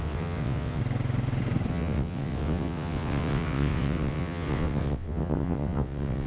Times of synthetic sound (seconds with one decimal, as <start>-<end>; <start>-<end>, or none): 0.0-0.8; 1.7-6.3

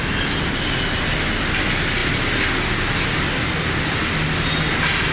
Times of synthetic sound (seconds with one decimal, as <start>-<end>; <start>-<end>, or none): none

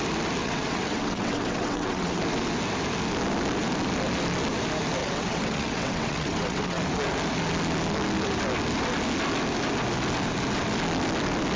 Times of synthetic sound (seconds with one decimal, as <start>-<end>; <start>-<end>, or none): 0.4-2.2; 5.0-6.8

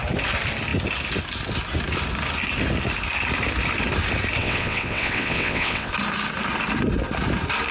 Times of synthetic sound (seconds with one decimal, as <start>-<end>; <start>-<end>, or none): 4.4-5.9

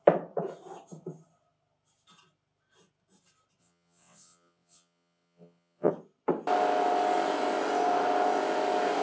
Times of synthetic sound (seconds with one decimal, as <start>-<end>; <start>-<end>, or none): 3.6-5.9